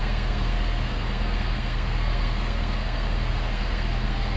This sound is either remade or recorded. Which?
remade